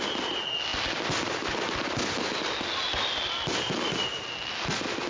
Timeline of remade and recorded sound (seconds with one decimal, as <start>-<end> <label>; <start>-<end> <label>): 0.0-5.1 recorded